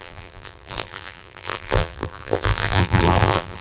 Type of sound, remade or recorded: remade